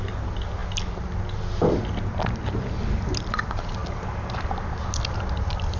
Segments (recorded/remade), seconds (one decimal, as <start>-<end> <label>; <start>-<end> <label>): 0.0-5.8 recorded